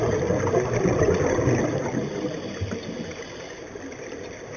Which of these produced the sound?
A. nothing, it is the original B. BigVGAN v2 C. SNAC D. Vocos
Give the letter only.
A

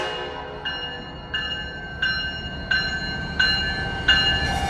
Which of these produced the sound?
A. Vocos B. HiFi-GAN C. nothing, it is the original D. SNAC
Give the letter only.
C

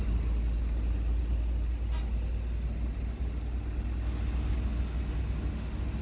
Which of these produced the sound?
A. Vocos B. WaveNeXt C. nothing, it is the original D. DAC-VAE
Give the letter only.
C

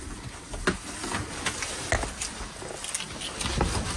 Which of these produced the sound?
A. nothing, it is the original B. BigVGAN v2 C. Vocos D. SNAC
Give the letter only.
A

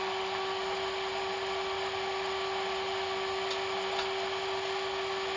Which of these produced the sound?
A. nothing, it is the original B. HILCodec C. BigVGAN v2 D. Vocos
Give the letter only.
A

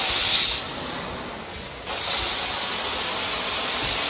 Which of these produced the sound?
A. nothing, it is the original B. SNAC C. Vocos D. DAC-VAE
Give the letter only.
A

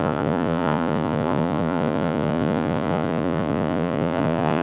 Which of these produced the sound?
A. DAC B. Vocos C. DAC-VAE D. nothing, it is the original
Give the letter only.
B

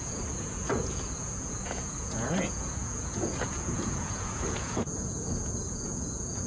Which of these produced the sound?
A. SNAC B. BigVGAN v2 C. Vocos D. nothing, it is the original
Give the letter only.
C